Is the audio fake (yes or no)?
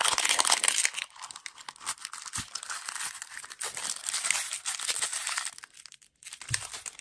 no